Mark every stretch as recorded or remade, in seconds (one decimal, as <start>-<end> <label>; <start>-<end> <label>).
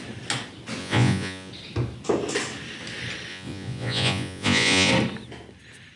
0.0-0.8 recorded; 0.8-1.5 remade; 1.5-3.3 recorded; 3.3-4.9 remade; 4.9-6.0 recorded